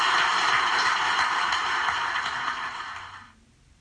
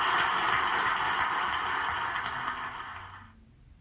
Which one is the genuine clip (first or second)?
second